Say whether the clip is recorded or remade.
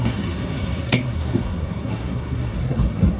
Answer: remade